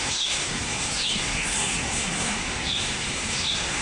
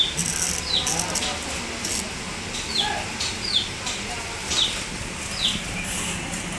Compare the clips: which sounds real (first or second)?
second